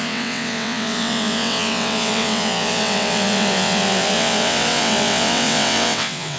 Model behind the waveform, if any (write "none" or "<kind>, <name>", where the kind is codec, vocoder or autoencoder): vocoder, WaveNeXt